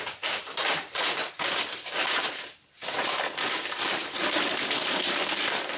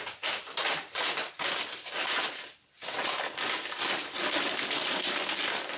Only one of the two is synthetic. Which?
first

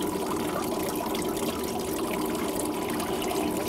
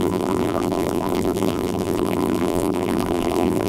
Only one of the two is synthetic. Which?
second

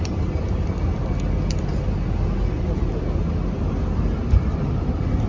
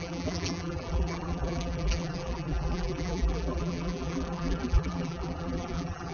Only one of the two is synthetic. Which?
second